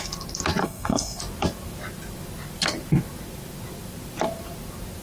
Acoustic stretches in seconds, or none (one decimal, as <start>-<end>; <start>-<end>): 0.0-0.6; 1.2-5.0